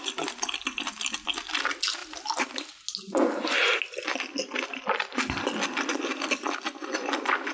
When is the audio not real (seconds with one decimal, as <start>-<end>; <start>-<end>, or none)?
none